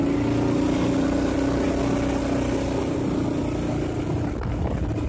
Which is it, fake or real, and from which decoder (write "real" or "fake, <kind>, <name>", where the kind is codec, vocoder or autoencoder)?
real